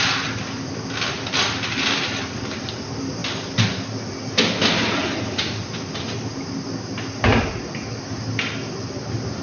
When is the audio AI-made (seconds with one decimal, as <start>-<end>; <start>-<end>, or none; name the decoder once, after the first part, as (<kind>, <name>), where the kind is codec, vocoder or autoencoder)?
7.3-7.8 (vocoder, BigVGAN v2)